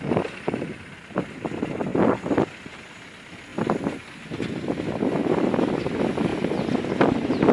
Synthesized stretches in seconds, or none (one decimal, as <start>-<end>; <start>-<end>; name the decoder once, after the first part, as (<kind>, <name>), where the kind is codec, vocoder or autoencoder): none